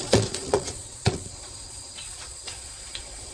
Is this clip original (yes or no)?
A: no